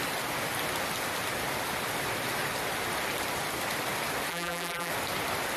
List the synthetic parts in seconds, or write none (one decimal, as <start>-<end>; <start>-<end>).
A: 4.3-4.9